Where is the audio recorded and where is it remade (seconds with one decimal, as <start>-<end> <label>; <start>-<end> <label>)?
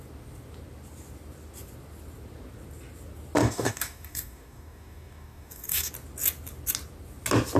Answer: 0.0-3.4 recorded; 3.4-5.9 remade; 5.9-7.6 recorded